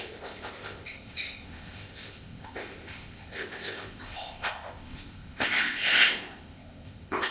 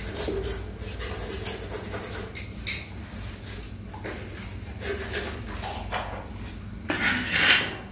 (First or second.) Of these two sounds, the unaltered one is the second